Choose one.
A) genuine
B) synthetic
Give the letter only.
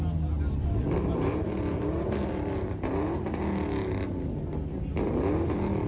A